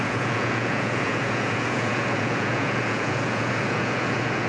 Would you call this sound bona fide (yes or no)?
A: no